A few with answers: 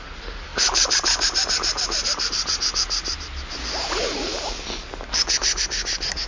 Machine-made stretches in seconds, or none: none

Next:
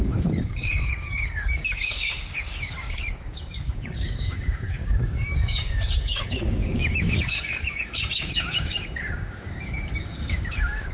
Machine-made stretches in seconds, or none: 0.0-10.9